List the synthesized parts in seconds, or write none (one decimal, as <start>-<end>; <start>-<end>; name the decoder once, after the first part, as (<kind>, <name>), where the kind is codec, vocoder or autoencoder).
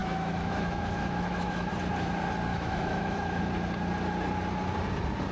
0.0-1.7 (autoencoder, DAC-VAE); 2.5-3.4